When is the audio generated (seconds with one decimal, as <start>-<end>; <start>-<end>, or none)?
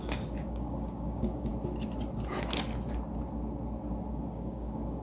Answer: 0.0-1.5; 4.1-5.0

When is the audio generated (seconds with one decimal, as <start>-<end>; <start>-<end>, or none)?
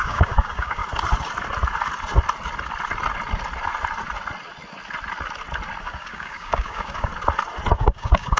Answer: 0.0-0.8; 5.8-7.1; 7.7-8.4